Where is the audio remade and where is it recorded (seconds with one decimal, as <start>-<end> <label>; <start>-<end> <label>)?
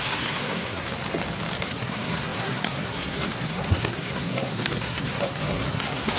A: 0.0-0.9 remade; 0.9-1.6 recorded; 1.6-6.2 remade